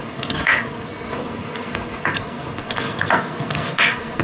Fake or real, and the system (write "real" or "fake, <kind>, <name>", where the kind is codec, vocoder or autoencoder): fake, codec, SNAC